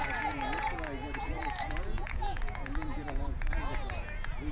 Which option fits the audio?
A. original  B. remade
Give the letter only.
B